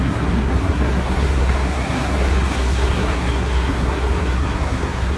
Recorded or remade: remade